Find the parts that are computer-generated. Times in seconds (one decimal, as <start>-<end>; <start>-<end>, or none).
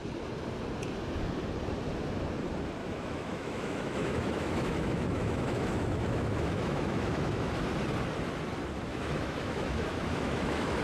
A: 2.8-7.5; 8.9-10.8